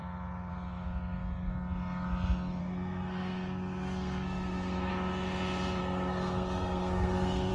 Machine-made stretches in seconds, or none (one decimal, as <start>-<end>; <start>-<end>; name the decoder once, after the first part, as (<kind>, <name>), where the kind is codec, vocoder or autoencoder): 2.6-4.9 (codec, SNAC); 5.8-7.5

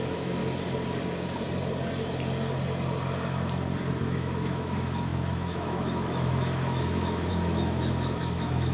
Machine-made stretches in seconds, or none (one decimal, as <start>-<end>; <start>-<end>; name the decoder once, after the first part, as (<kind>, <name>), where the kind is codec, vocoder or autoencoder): 0.0-0.4 (autoencoder, DAC-VAE); 4.0-8.7

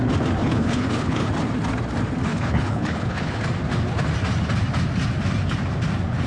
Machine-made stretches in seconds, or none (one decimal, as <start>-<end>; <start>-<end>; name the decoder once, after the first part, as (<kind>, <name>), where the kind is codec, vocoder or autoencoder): 0.4-1.3 (codec, HILCodec); 2.3-3.4